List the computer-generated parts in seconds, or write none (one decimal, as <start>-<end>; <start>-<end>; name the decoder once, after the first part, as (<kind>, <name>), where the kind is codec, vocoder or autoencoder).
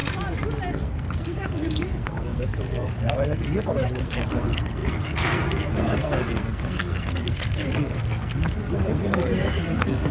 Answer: 0.7-10.1 (codec, SNAC)